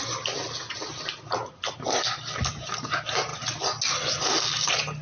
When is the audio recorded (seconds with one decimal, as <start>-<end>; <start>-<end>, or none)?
0.0-5.0